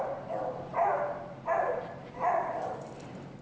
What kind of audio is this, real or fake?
fake